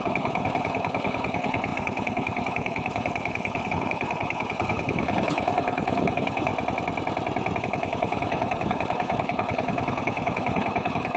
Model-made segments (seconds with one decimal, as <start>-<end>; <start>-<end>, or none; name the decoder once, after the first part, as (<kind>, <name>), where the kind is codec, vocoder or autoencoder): 0.0-6.5 (codec, HILCodec); 7.6-11.2

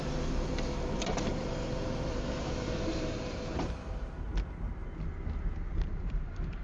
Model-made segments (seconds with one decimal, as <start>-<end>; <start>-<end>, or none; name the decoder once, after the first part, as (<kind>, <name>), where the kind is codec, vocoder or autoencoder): 0.0-4.3 (vocoder, BigVGAN v2); 5.7-6.6

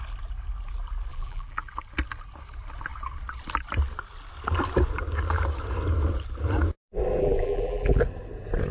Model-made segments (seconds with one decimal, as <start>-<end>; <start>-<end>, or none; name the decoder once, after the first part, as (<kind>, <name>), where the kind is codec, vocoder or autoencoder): 1.1-1.7 (vocoder, BigVGAN v2); 7.2-8.0

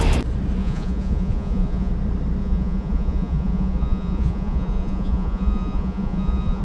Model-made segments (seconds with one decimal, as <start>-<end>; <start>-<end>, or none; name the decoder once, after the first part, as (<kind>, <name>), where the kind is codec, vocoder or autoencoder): 0.6-1.9 (vocoder, Vocos); 2.4-6.6

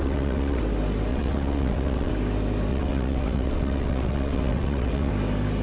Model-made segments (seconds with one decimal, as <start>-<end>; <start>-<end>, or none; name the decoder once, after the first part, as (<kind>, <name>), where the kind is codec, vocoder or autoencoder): 0.0-0.6 (vocoder, WaveNeXt); 1.1-2.1; 2.7-5.1

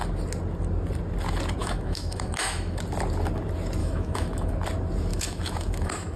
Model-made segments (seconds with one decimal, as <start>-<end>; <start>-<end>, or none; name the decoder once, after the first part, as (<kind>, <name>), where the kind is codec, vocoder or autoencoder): 1.6-2.8 (autoencoder, DAC-VAE); 3.8-4.5; 5.1-6.2

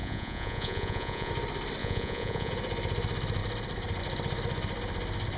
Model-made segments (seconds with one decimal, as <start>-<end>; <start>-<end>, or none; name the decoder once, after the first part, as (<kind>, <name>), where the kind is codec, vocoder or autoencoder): 0.0-1.3 (vocoder, Vocos); 1.8-2.5

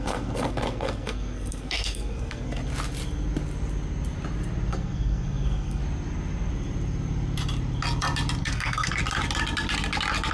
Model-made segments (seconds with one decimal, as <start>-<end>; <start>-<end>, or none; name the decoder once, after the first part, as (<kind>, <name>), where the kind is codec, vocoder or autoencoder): 0.0-2.6 (codec, SNAC); 4.7-5.8; 8.4-9.0